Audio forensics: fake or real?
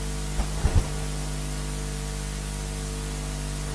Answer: real